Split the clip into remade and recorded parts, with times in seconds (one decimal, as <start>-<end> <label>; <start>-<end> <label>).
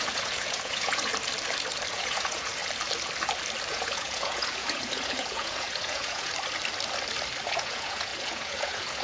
0.0-1.1 remade; 1.1-1.9 recorded; 1.9-2.6 remade; 2.6-3.7 recorded; 3.7-6.3 remade; 6.3-7.4 recorded; 7.4-9.0 remade